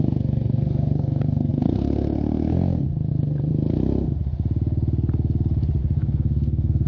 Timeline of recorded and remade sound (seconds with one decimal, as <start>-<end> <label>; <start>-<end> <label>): 0.0-3.5 remade; 3.5-5.8 recorded; 5.8-6.9 remade